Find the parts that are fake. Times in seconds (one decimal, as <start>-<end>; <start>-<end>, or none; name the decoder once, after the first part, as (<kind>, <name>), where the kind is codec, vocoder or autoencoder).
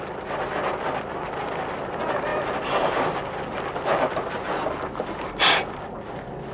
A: none